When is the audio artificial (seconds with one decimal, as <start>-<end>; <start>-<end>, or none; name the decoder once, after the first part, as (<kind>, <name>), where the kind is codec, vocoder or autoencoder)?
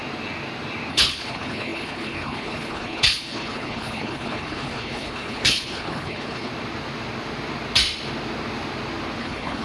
0.9-6.5 (codec, HILCodec); 9.2-9.6